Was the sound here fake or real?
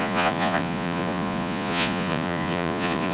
fake